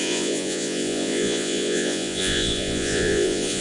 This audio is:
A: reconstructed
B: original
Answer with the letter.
A